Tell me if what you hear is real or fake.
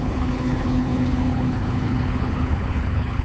fake